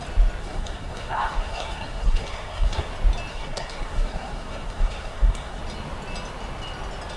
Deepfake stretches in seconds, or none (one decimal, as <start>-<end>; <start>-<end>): 0.4-2.9; 3.3-5.6